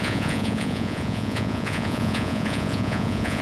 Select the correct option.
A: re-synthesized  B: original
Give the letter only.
A